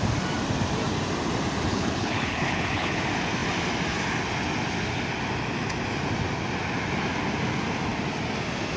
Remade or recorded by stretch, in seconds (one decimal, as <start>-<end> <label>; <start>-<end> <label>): 0.0-1.7 recorded; 1.7-3.0 remade; 3.0-8.8 recorded

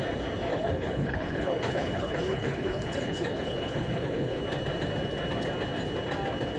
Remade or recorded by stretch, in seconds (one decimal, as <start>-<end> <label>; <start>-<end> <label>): 0.0-0.5 recorded; 0.5-4.4 remade; 4.4-6.6 recorded

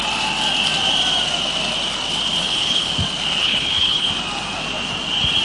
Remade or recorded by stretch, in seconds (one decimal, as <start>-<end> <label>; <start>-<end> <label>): 0.0-2.4 recorded; 2.4-2.9 remade; 2.9-3.4 recorded; 3.4-4.1 remade; 4.1-5.4 recorded

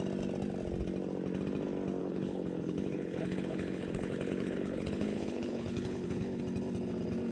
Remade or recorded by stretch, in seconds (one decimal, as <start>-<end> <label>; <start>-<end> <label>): 0.0-2.0 recorded; 2.0-6.4 remade; 6.4-7.3 recorded

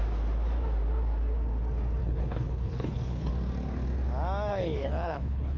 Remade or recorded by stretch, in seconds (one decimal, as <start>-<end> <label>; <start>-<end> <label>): 0.0-2.0 recorded; 2.0-3.3 remade; 3.3-4.5 recorded; 4.5-5.6 remade

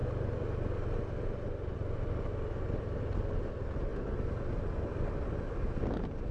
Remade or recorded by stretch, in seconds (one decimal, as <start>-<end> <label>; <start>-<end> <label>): 0.0-6.3 recorded

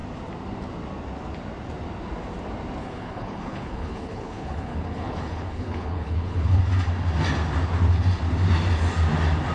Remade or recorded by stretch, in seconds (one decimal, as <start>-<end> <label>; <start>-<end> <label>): 0.0-2.8 recorded; 2.8-6.6 remade; 6.6-9.5 recorded